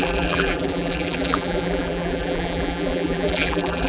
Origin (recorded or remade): remade